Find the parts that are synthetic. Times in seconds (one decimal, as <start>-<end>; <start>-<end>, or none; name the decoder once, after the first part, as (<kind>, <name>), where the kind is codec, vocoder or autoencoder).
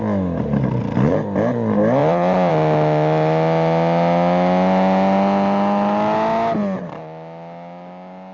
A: 2.0-2.5 (vocoder, BigVGAN v2)